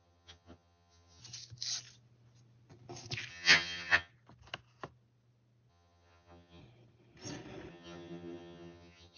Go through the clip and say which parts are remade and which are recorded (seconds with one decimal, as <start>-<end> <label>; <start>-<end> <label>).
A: 0.0-1.2 remade; 1.2-3.3 recorded; 3.3-4.1 remade; 4.1-5.7 recorded; 5.7-6.6 remade; 6.6-7.7 recorded; 7.7-9.2 remade